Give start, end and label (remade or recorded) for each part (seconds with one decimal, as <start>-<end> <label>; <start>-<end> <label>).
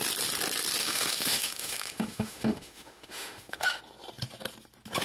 0.0-0.8 recorded; 0.8-3.8 remade; 3.8-5.0 recorded